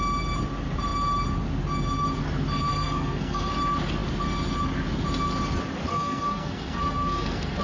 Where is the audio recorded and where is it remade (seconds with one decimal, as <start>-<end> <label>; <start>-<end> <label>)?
0.0-2.7 recorded; 2.7-3.5 remade; 3.5-5.9 recorded; 5.9-7.6 remade